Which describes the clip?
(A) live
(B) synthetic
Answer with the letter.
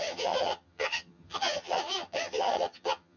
B